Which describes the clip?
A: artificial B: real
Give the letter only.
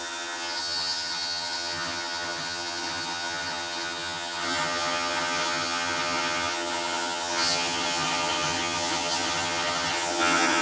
A